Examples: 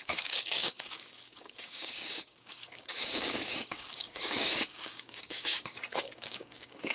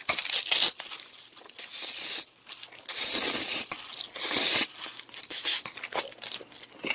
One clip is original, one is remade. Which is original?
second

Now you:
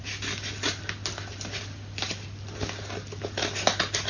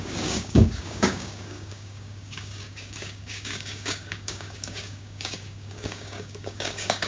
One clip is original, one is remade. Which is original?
first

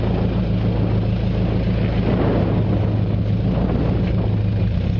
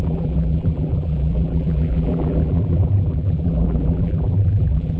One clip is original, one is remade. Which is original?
first